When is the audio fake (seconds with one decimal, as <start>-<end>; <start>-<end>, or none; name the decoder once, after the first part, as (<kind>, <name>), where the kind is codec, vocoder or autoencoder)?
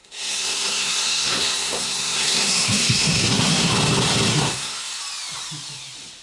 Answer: 0.0-3.7 (codec, SNAC); 4.3-5.0